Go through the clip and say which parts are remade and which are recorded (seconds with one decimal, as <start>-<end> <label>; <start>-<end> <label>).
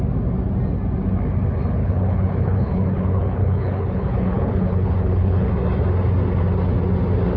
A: 0.0-1.8 recorded; 1.8-5.5 remade; 5.5-7.4 recorded